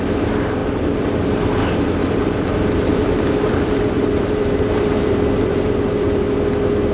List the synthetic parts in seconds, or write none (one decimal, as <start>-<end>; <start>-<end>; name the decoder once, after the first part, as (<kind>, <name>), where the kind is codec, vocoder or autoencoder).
2.0-6.1 (vocoder, BigVGAN v2)